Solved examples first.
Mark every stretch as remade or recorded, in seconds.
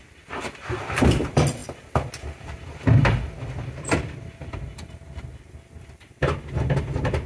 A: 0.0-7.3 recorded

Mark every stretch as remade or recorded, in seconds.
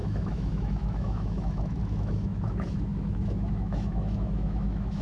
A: 0.0-5.0 remade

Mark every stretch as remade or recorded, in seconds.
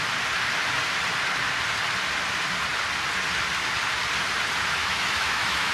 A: 0.0-4.8 recorded; 4.8-5.7 remade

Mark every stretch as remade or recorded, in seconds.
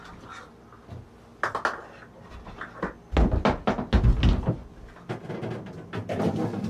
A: 0.0-6.7 recorded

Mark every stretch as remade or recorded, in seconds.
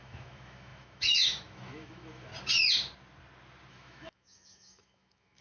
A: 0.0-2.3 remade; 2.3-3.7 recorded; 3.7-5.4 remade